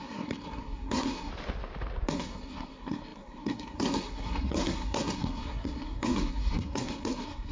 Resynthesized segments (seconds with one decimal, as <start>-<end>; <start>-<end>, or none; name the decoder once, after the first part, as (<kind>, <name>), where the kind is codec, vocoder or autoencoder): 0.0-1.3 (codec, SNAC); 2.1-7.5